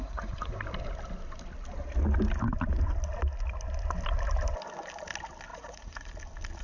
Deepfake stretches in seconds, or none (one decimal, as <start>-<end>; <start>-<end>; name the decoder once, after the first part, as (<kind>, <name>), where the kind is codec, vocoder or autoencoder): 0.0-0.5 (vocoder, Vocos); 5.5-6.1